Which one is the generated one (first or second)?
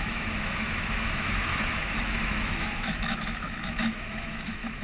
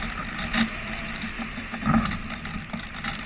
first